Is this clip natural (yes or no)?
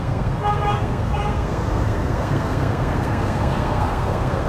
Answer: no